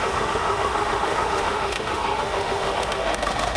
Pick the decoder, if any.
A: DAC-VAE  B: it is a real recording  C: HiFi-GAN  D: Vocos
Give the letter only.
A